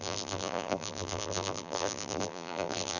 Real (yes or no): no